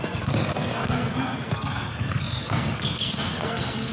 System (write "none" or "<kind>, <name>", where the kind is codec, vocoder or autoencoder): codec, SNAC